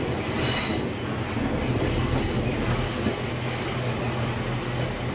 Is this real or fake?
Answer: real